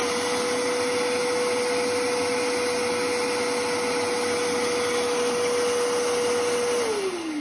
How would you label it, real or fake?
real